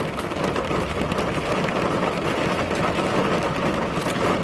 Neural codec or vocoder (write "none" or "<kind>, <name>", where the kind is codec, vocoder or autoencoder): none